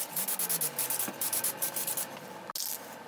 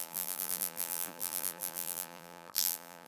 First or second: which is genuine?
first